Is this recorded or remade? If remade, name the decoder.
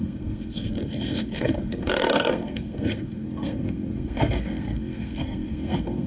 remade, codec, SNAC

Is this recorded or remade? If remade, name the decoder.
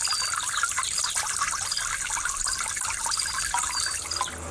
recorded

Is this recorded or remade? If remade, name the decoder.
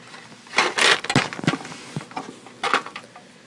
recorded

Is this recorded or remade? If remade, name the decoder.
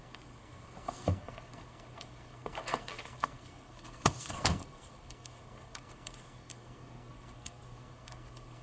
remade, codec, SNAC